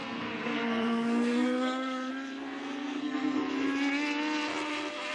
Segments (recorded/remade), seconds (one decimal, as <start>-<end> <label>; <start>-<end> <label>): 0.0-2.1 remade; 2.1-2.6 recorded; 2.6-3.5 remade; 3.5-5.1 recorded